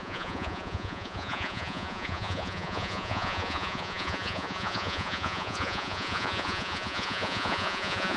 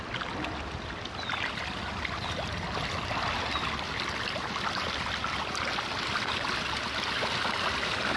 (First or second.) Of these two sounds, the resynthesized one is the first